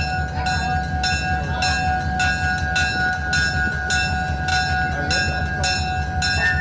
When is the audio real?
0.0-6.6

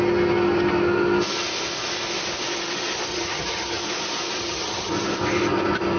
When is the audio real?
0.0-3.1; 3.8-4.4; 4.9-6.0

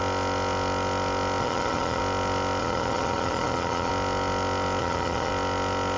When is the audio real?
0.0-1.4; 2.0-2.6; 3.9-4.8; 5.3-6.0

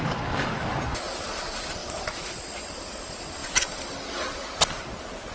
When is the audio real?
0.0-5.3

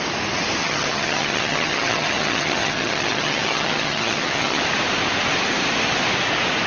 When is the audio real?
0.0-0.6; 4.6-6.7

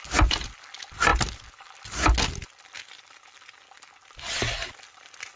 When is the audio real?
0.0-5.4

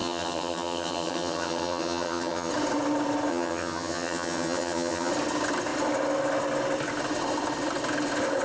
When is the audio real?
2.5-3.3; 5.1-8.4